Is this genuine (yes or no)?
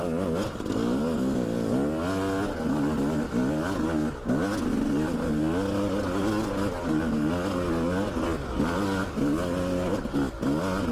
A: yes